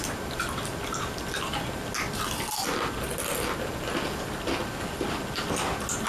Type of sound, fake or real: real